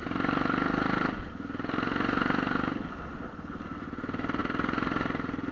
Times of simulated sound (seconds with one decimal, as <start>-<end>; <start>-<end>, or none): none